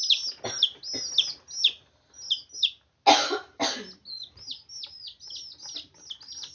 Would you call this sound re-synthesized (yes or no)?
no